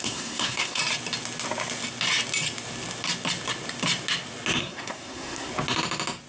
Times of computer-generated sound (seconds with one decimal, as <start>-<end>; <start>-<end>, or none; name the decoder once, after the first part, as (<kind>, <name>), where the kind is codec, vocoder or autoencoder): 0.0-0.8 (codec, SNAC); 4.6-5.5

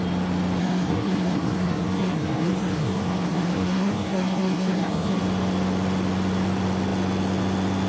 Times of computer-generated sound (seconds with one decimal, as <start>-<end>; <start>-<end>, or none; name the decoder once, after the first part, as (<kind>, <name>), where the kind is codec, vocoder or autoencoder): 0.6-5.2 (codec, SNAC)

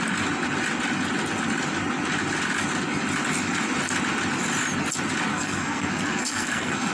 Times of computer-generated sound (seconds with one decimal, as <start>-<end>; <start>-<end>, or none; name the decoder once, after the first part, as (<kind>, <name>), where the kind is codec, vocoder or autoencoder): 5.3-6.9 (codec, SNAC)

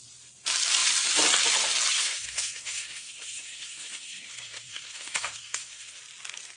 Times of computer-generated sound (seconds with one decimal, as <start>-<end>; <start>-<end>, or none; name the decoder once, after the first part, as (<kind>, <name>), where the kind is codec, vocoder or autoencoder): 2.0-6.0 (codec, SNAC)

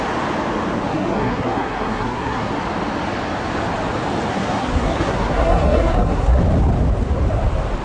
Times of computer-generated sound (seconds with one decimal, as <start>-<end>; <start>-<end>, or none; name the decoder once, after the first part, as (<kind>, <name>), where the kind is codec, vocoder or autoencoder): 0.9-2.5 (codec, SNAC); 4.3-6.4

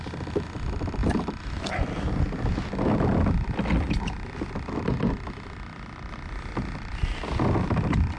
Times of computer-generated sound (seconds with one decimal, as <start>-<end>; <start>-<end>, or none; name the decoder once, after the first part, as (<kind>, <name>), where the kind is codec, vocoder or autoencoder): none